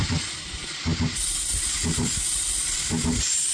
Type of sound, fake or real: real